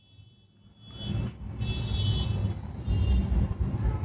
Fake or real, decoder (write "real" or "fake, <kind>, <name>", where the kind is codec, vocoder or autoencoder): real